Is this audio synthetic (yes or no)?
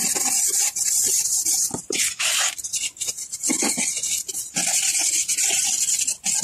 no